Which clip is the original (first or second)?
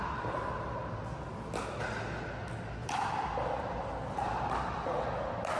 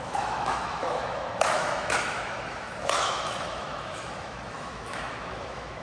first